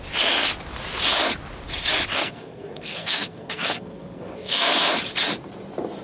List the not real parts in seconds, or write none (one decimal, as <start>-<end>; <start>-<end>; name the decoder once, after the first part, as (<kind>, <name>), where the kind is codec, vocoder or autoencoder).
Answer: 2.1-4.9 (codec, SNAC)